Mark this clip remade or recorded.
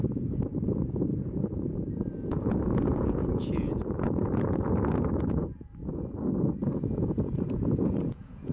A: remade